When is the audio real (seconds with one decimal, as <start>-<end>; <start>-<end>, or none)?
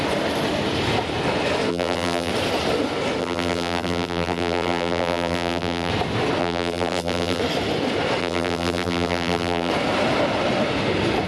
0.0-1.7; 2.3-3.2; 5.9-6.4; 7.4-8.2; 9.7-11.3